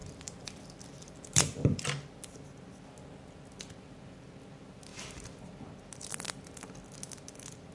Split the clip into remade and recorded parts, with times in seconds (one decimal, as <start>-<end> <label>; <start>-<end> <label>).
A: 0.0-2.2 remade; 2.2-7.7 recorded